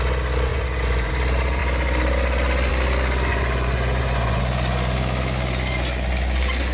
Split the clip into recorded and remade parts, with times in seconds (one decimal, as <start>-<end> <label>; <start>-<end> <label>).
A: 0.0-0.5 recorded; 0.5-1.1 remade; 1.1-3.3 recorded; 3.3-4.4 remade; 4.4-6.7 recorded